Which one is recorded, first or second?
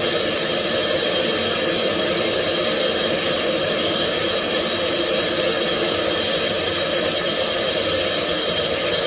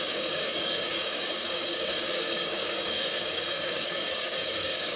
first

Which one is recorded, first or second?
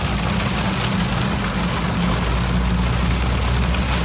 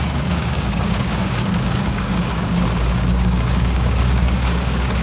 first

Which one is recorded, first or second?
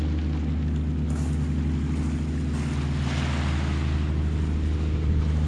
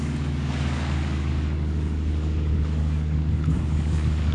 first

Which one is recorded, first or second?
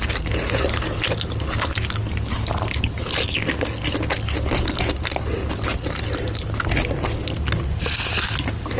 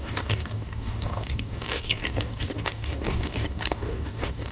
first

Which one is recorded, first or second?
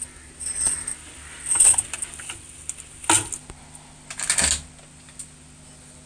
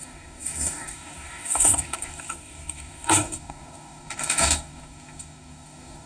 first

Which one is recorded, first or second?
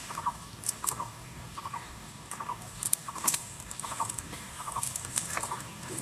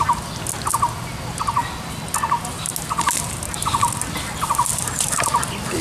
second